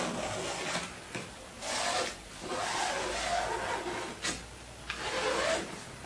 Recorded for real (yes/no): yes